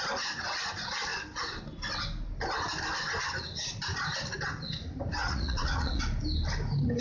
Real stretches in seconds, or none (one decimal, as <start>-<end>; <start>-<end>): 0.0-5.2; 6.0-7.0